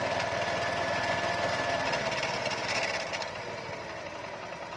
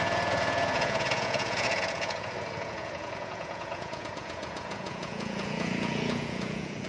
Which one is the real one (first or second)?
first